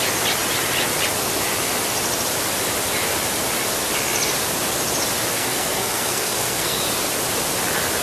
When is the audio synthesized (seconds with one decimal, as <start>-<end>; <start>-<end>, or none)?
5.3-6.8